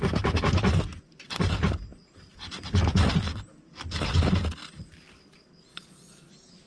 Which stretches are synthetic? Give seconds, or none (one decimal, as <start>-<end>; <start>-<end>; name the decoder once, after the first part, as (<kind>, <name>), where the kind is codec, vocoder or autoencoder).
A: 5.7-6.3 (vocoder, Vocos)